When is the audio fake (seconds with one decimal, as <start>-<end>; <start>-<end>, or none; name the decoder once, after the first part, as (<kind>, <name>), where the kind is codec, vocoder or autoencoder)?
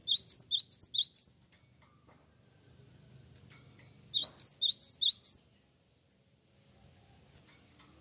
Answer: none